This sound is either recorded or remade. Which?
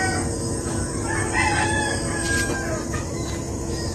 recorded